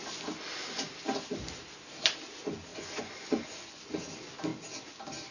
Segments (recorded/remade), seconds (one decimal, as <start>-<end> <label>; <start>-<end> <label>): 0.0-2.7 recorded; 2.7-3.8 remade; 3.8-5.3 recorded